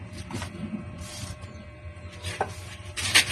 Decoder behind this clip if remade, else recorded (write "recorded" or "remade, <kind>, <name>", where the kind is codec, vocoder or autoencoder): remade, vocoder, BigVGAN v2